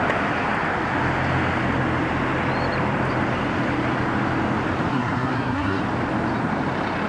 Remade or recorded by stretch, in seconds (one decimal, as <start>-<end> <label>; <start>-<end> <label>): 0.0-4.9 recorded; 4.9-5.8 remade; 5.8-7.1 recorded